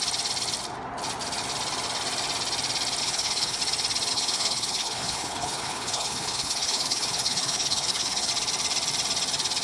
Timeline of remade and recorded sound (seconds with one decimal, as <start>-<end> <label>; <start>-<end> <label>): 0.0-3.0 recorded; 3.0-3.6 remade; 3.6-4.1 recorded; 4.1-8.3 remade; 8.3-9.6 recorded